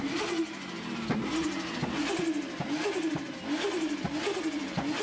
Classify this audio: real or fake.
real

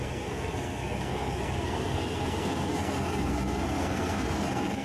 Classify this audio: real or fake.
fake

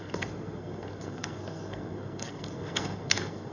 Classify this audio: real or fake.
fake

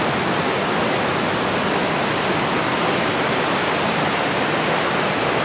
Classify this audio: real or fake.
real